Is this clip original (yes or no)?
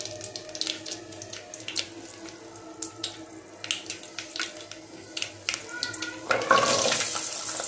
yes